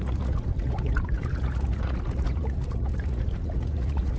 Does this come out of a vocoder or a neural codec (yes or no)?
yes